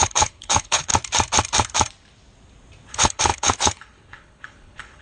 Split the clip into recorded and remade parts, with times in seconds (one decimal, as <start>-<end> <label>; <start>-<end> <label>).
0.0-0.9 remade; 0.9-2.9 recorded; 2.9-5.0 remade